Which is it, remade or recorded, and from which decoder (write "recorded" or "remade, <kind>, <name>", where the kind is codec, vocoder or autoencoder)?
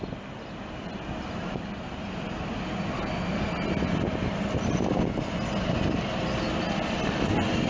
recorded